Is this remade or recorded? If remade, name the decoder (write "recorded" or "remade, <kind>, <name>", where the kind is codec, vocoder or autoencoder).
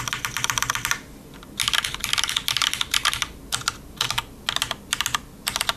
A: recorded